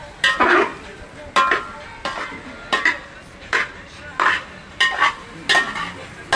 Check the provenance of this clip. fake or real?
real